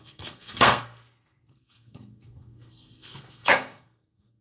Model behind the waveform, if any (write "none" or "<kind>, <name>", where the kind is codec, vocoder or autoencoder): codec, SNAC